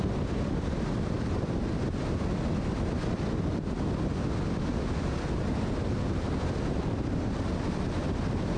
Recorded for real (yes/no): yes